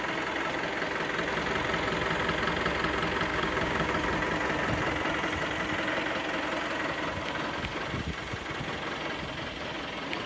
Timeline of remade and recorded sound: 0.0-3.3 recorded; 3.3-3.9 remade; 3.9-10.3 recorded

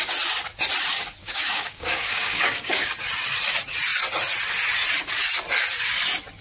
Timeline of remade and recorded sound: 0.0-1.2 recorded; 1.2-2.9 remade; 2.9-6.4 recorded

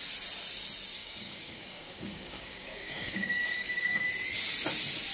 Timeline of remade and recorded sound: 0.0-1.0 recorded; 1.0-4.1 remade; 4.1-5.1 recorded